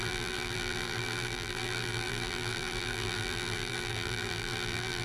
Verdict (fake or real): fake